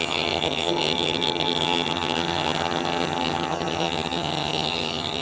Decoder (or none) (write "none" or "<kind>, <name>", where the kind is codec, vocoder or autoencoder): vocoder, HiFi-GAN